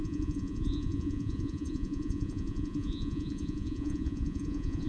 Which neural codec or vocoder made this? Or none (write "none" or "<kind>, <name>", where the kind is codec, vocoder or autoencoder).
vocoder, Vocos